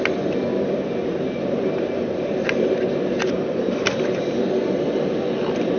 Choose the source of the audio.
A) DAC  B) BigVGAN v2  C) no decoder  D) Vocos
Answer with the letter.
B